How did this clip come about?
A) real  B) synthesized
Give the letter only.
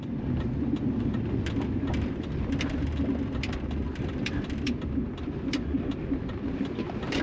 B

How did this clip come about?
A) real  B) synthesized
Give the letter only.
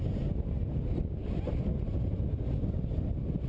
A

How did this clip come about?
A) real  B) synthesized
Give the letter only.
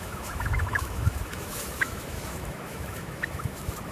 B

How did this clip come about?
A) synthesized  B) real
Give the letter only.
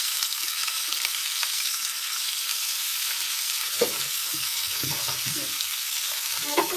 A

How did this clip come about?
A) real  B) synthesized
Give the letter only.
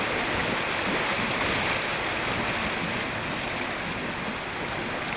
A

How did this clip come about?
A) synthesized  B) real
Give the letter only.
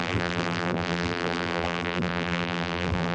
A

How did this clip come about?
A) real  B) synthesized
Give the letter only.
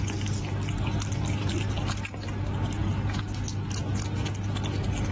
A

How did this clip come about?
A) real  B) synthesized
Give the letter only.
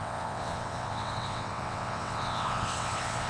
B